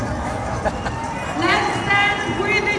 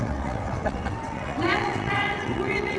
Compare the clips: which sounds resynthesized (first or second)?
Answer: second